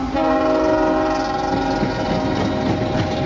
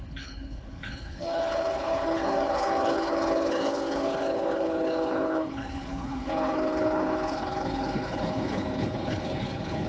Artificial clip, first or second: second